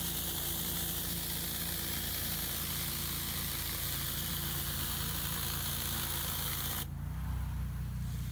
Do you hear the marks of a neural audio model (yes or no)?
no